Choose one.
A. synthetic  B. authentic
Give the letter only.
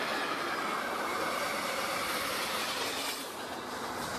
B